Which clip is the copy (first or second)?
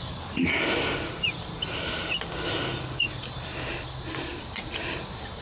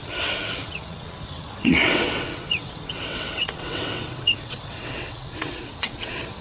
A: second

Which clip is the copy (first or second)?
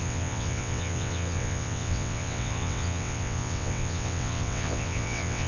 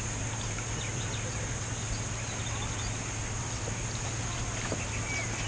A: first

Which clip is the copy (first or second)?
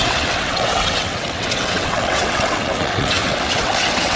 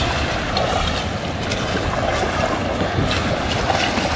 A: first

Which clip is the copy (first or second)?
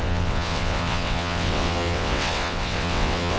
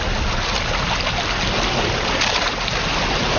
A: first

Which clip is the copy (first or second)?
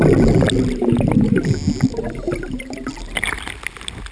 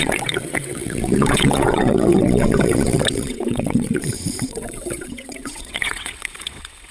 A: second